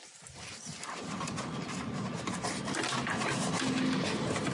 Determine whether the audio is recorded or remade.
recorded